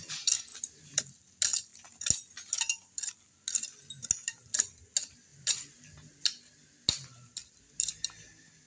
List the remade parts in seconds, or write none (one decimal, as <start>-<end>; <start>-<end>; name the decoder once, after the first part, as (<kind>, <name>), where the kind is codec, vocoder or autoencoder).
0.5-1.0 (vocoder, BigVGAN v2); 5.3-5.8

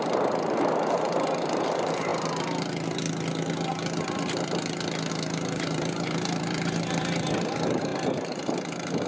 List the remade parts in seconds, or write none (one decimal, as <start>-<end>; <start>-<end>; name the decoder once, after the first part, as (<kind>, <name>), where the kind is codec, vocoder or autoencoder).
0.0-2.1 (vocoder, BigVGAN v2); 5.1-9.1

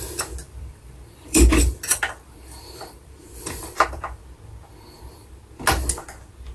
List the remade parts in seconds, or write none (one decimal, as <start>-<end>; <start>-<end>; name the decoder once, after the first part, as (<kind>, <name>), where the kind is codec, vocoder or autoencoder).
0.4-4.2 (vocoder, BigVGAN v2)

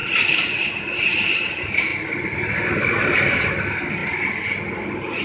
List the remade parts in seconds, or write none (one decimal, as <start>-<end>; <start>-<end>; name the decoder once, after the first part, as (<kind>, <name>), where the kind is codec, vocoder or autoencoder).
0.0-0.7 (vocoder, BigVGAN v2); 1.9-3.5